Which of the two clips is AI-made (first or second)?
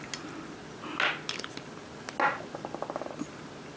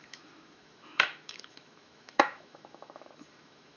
second